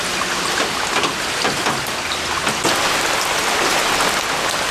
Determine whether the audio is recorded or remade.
recorded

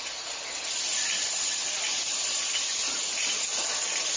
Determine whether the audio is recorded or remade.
recorded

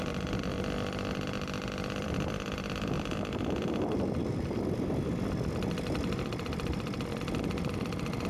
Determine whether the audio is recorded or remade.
remade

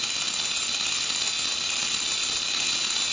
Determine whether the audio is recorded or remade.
recorded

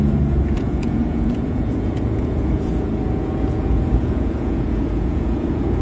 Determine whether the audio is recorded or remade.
remade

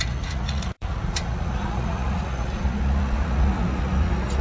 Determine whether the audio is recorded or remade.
remade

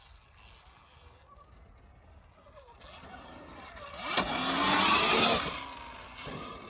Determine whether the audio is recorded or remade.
recorded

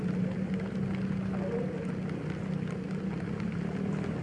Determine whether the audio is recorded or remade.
recorded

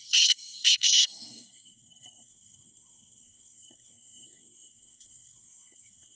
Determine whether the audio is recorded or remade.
remade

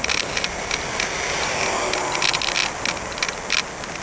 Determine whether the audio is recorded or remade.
recorded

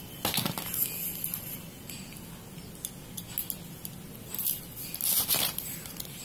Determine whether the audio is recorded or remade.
recorded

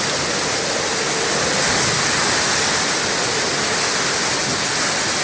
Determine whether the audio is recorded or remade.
recorded